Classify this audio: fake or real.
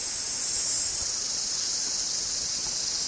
real